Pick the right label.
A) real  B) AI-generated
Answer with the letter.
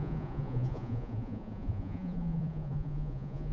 B